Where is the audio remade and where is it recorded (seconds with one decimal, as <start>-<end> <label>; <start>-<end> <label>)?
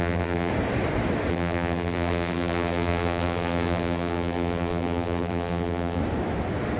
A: 0.0-0.5 remade; 0.5-1.3 recorded; 1.3-6.0 remade; 6.0-6.8 recorded